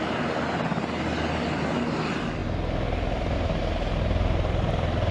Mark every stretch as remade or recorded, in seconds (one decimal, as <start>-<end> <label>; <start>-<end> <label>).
0.0-5.1 recorded